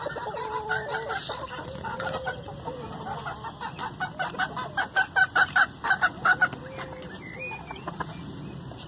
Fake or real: real